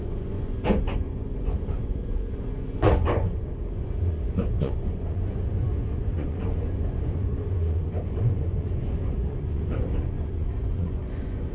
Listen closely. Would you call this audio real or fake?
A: fake